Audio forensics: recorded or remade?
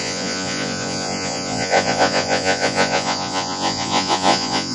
remade